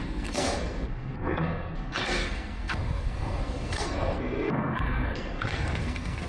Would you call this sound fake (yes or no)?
yes